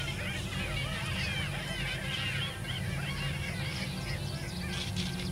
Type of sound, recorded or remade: recorded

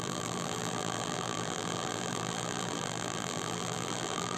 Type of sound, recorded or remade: remade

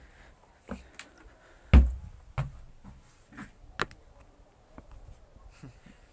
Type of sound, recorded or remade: recorded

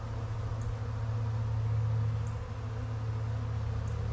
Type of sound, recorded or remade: recorded